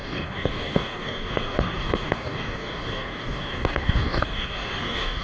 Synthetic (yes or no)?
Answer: yes